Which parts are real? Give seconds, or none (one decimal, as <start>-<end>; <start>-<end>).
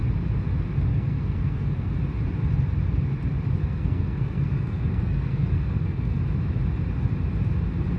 0.0-0.9; 1.9-3.6; 6.2-8.0